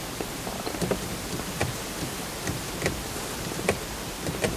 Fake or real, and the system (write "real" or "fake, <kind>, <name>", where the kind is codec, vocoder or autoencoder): real